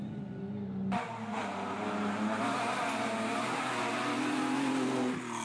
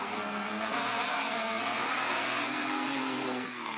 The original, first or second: first